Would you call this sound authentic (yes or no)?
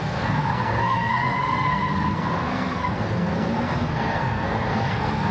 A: no